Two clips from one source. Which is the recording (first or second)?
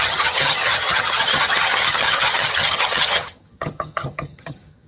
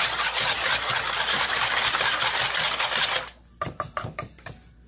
second